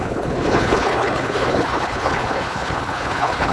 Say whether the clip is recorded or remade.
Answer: remade